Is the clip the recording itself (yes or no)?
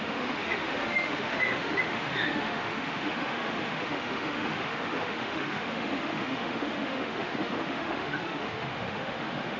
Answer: no